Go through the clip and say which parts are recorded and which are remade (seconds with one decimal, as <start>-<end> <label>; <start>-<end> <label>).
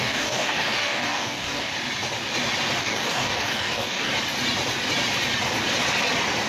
0.0-1.7 remade; 1.7-2.8 recorded; 2.8-4.1 remade; 4.1-6.5 recorded